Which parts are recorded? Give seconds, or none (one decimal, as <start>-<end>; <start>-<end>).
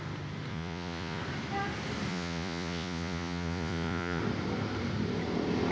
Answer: 0.0-0.5; 1.2-2.1; 4.2-5.7